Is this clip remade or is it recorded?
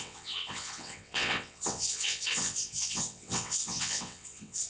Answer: remade